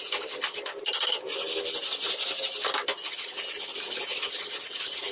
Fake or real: real